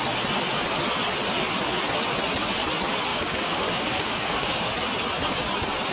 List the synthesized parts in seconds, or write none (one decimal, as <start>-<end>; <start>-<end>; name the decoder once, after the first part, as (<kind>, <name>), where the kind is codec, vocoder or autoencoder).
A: 3.1-4.7 (codec, DAC)